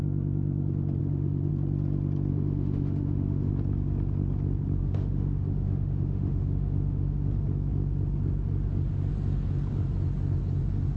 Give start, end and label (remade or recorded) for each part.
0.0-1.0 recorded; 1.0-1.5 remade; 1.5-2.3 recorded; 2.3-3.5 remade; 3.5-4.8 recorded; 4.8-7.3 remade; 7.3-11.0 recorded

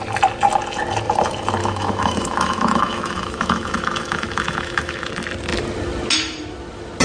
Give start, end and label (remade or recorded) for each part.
0.0-1.6 recorded; 1.6-5.1 remade; 5.1-7.0 recorded